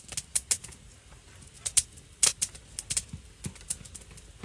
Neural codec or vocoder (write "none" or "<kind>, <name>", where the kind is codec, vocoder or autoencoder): none